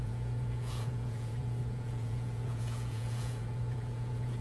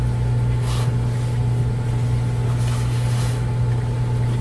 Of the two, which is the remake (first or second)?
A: first